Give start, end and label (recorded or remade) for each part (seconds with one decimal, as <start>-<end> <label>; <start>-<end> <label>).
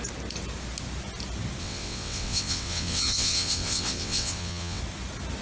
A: 0.0-1.6 recorded; 1.6-4.8 remade; 4.8-5.4 recorded